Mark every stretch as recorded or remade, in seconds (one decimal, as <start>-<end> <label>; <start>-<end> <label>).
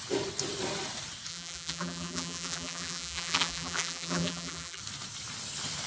0.0-1.3 recorded; 1.3-4.8 remade; 4.8-5.9 recorded